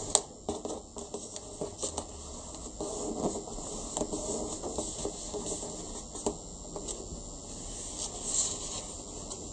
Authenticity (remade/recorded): recorded